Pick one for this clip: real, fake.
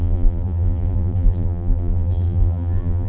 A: fake